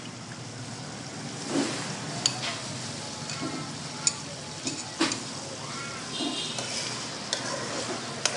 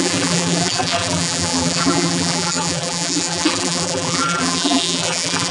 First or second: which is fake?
second